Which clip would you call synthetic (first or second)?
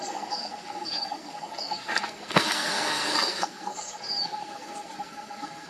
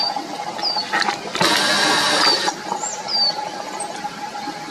first